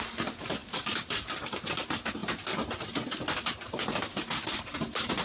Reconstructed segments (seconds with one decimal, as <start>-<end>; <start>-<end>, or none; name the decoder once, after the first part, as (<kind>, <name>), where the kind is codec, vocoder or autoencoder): 0.6-1.6 (vocoder, BigVGAN v2)